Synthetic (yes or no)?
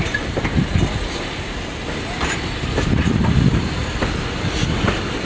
no